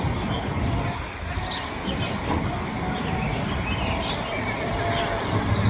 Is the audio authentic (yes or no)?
yes